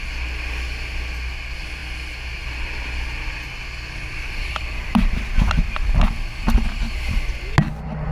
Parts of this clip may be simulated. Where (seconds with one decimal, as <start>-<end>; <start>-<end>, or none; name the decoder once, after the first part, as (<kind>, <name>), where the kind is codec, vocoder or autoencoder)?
4.4-6.0 (vocoder, BigVGAN v2)